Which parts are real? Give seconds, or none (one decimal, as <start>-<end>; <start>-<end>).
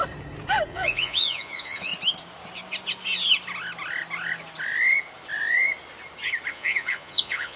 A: 0.0-0.7; 1.9-6.5